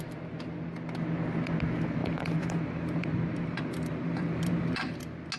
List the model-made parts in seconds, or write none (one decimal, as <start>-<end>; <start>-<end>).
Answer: 2.0-4.9